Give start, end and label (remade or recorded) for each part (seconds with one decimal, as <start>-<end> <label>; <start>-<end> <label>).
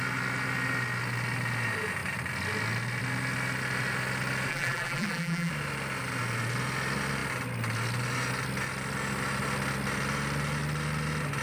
0.0-4.5 recorded; 4.5-5.5 remade; 5.5-11.4 recorded